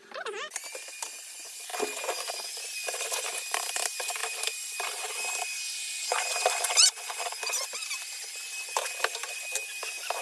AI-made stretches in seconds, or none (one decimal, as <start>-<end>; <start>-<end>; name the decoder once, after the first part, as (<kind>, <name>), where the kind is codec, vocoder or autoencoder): none